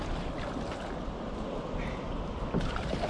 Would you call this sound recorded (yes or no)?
yes